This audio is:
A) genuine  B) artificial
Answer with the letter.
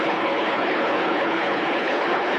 B